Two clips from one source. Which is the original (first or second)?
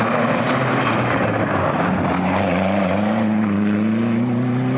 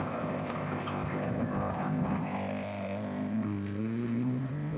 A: first